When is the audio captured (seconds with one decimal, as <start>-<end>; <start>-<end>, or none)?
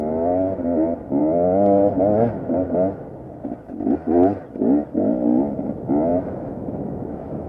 0.0-6.1